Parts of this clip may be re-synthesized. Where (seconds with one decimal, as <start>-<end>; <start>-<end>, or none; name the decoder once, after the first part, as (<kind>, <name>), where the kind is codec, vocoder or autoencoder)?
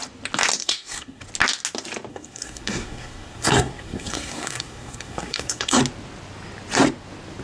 0.6-1.2 (codec, SNAC); 2.1-5.8